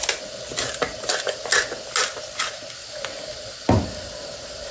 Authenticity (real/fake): real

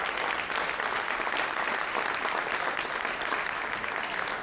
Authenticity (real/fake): real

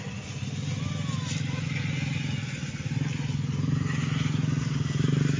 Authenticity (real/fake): real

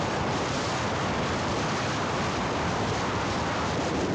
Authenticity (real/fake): real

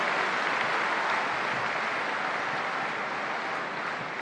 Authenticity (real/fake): real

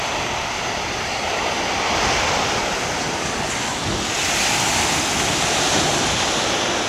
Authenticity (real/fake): real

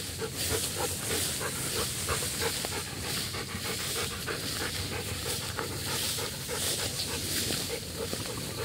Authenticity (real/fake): real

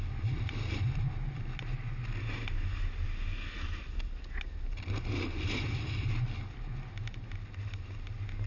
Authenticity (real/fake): real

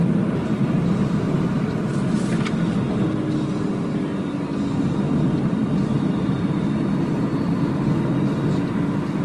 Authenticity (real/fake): real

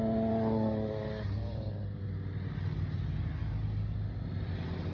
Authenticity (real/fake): real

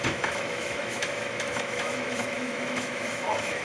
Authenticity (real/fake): fake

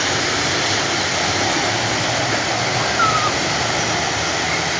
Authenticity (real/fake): real